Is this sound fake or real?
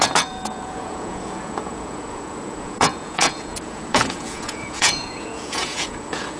fake